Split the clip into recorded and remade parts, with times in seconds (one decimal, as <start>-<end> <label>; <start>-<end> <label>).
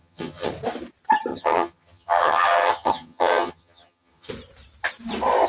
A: 0.0-0.5 remade; 0.5-1.3 recorded; 1.3-4.3 remade; 4.3-5.5 recorded